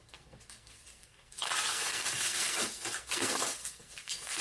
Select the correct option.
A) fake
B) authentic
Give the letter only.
A